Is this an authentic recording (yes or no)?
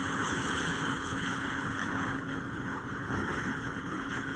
no